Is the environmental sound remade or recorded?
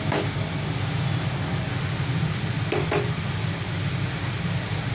recorded